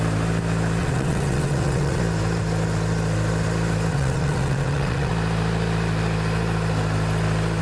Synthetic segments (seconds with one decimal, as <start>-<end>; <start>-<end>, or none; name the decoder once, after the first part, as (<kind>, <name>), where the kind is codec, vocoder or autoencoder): 0.8-2.0 (vocoder, WaveNeXt); 3.9-5.1